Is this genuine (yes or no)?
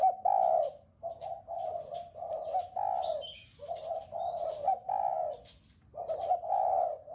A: yes